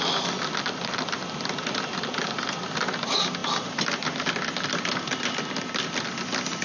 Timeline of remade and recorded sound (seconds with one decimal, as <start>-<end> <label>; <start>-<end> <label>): 0.0-6.6 recorded